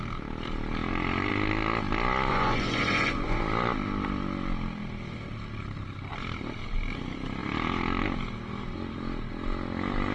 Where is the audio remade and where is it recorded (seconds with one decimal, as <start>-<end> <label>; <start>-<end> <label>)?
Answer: 0.0-2.3 recorded; 2.3-3.4 remade; 3.4-10.1 recorded